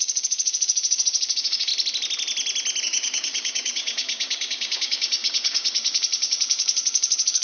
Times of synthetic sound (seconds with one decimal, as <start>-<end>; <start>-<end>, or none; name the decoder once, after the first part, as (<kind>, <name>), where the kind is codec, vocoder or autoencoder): 0.0-1.7 (codec, DAC); 2.8-7.4